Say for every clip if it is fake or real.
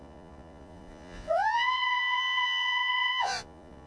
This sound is fake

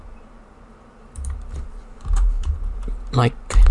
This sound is fake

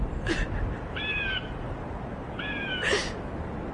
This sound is real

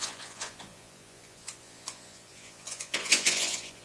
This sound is fake